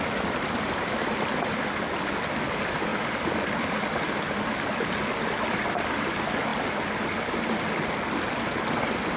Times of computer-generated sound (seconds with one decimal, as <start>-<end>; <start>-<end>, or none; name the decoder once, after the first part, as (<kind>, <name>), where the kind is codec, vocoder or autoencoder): none